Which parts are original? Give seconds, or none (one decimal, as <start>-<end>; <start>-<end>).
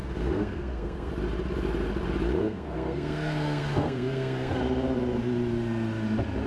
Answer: 1.1-2.4; 4.6-6.5